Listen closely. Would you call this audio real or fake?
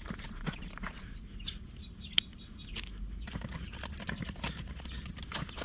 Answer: real